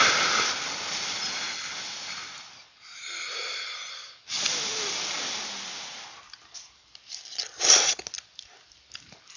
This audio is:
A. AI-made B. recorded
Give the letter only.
B